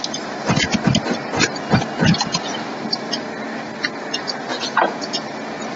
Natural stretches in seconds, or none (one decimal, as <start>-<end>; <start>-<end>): 0.0-4.5; 5.2-5.8